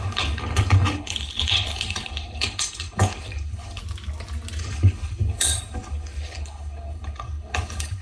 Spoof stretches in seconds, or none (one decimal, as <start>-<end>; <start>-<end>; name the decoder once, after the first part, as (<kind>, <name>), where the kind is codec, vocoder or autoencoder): 0.0-3.8 (codec, HILCodec); 4.6-8.0